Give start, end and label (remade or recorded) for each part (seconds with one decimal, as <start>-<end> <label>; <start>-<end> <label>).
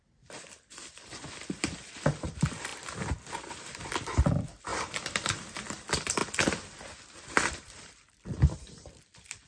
0.0-2.7 remade; 2.7-3.5 recorded; 3.5-6.2 remade; 6.2-7.5 recorded; 7.5-9.5 remade